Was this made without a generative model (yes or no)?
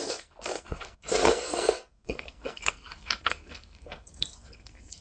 no